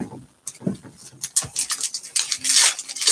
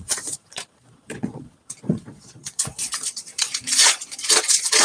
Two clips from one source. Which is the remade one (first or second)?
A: second